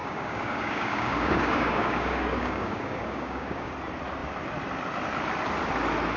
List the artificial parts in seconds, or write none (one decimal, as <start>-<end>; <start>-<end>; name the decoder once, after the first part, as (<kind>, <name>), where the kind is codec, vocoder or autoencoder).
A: 0.0-3.7 (codec, DAC)